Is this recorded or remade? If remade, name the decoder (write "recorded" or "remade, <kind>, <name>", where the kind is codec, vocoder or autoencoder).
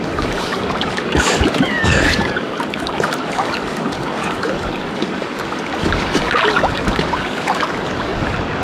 remade, codec, DAC